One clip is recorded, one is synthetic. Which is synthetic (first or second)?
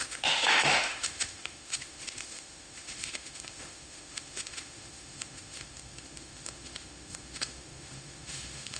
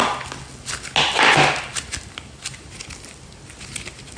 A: first